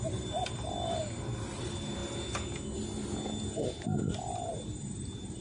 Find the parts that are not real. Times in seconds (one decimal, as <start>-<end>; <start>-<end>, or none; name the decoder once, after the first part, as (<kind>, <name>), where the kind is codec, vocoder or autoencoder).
0.0-2.0 (vocoder, BigVGAN v2); 4.6-5.4